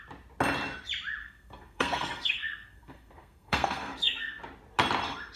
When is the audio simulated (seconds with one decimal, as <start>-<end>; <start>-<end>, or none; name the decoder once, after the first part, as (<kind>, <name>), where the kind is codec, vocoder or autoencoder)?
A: 1.2-4.4 (codec, SNAC)